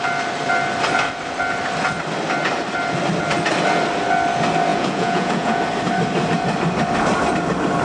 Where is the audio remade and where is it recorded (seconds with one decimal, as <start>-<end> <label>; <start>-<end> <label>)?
0.0-4.7 recorded; 4.7-5.6 remade; 5.6-7.8 recorded